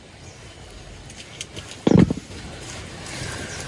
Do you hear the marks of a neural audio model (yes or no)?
no